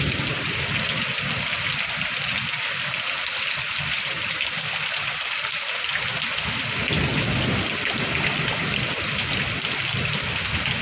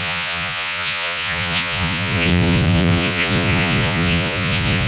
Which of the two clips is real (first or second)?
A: first